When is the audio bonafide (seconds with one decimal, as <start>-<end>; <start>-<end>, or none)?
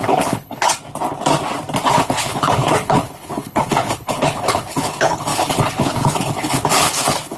0.7-1.9